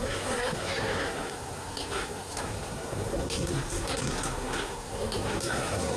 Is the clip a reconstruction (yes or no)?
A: yes